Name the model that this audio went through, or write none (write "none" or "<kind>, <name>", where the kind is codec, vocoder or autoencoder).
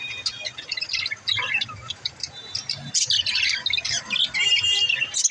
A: none